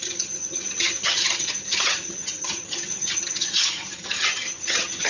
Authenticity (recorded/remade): remade